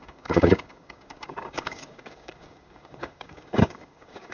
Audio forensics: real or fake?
fake